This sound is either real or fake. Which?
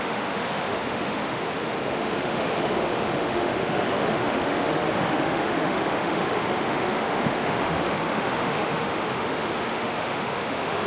fake